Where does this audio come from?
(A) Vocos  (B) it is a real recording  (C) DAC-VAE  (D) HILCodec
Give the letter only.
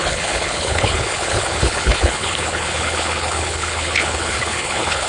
D